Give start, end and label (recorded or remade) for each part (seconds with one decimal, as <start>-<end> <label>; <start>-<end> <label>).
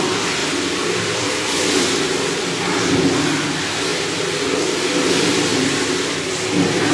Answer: 0.0-0.4 recorded; 0.4-1.8 remade; 1.8-5.5 recorded; 5.5-6.0 remade; 6.0-6.9 recorded